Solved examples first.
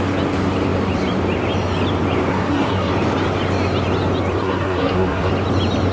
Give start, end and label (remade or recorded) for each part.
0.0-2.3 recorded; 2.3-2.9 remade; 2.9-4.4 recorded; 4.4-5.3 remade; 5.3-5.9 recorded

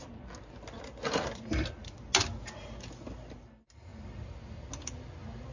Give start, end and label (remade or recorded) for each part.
0.0-5.5 recorded

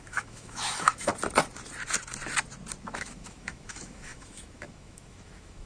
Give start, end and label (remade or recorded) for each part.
0.0-1.1 remade; 1.1-2.8 recorded; 2.8-5.7 remade

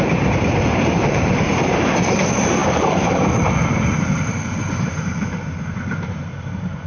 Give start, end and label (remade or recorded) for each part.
0.0-6.9 remade